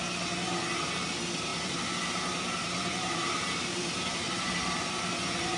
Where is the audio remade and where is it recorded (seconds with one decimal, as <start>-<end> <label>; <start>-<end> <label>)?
0.0-1.5 recorded; 1.5-4.9 remade; 4.9-5.6 recorded